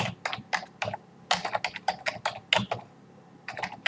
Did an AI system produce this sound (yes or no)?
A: no